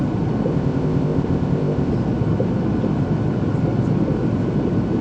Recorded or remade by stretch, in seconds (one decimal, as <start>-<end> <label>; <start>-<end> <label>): 0.0-0.5 recorded; 0.5-1.9 remade; 1.9-5.0 recorded

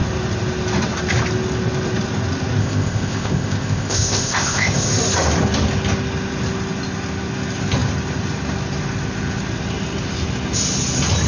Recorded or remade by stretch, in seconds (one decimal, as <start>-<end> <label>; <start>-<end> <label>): 0.0-2.6 recorded; 2.6-4.9 remade; 4.9-11.3 recorded

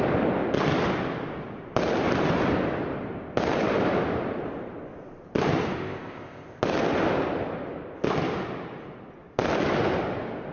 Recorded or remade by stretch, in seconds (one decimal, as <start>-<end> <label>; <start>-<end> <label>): 0.0-5.8 recorded; 5.8-6.6 remade; 6.6-10.5 recorded

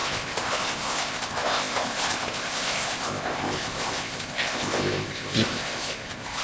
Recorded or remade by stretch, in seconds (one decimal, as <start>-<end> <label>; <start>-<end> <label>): 0.0-6.4 remade

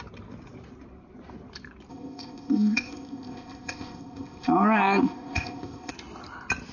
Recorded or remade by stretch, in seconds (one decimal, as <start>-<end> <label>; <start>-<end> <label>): 0.0-1.9 recorded; 1.9-5.9 remade; 5.9-6.7 recorded